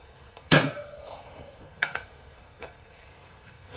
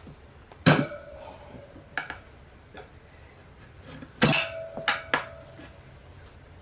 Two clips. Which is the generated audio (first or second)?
first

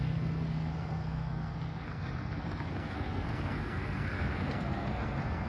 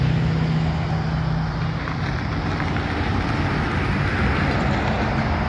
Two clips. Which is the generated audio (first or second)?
first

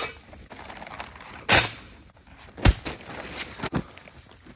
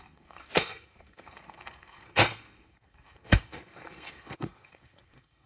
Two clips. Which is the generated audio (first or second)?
second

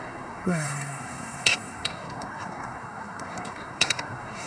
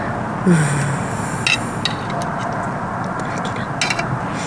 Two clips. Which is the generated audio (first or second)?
first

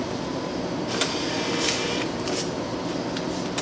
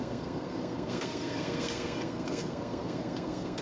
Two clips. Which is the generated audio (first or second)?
second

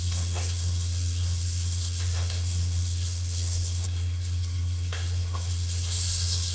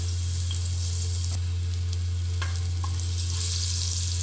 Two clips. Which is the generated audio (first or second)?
first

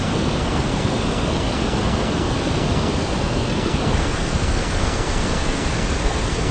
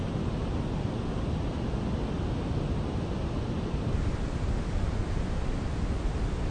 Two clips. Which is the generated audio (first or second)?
first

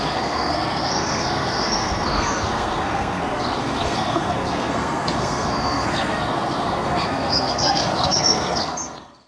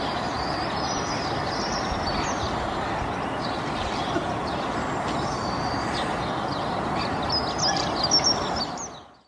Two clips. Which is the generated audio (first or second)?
first